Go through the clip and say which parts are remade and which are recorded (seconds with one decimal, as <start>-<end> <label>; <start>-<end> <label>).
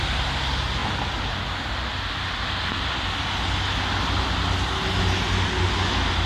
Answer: 0.0-6.3 recorded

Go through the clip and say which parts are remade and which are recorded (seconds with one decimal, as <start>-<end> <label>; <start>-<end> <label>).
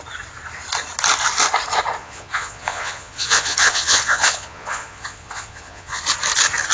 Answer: 0.0-2.0 recorded; 2.0-6.0 remade; 6.0-6.7 recorded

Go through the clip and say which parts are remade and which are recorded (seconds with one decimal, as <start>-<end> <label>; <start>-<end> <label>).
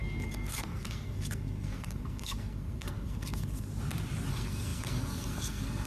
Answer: 0.0-3.7 remade; 3.7-4.3 recorded; 4.3-5.9 remade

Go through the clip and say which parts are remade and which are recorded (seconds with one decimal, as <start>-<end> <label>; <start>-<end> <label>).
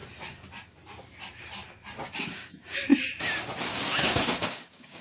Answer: 0.0-2.2 recorded; 2.2-2.9 remade; 2.9-3.6 recorded; 3.6-5.0 remade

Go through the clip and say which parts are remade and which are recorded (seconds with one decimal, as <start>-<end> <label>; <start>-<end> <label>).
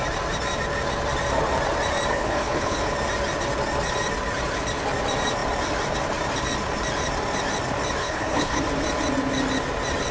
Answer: 0.0-2.1 recorded; 2.1-2.9 remade; 2.9-8.0 recorded; 8.0-8.6 remade; 8.6-10.1 recorded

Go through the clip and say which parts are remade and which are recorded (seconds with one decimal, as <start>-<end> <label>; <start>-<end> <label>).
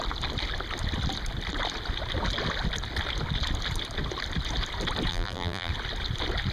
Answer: 0.0-5.1 recorded; 5.1-5.7 remade; 5.7-6.5 recorded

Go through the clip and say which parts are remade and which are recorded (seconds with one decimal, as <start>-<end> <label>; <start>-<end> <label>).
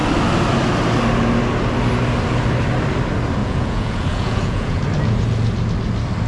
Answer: 0.0-3.4 recorded; 3.4-4.8 remade; 4.8-6.3 recorded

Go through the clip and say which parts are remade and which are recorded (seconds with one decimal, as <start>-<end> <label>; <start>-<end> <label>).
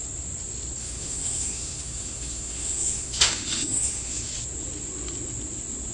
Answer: 0.0-0.8 recorded; 0.8-4.3 remade; 4.3-5.9 recorded